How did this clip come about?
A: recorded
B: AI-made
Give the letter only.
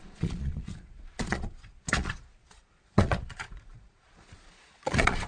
B